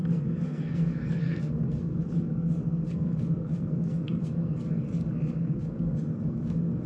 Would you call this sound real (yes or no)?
no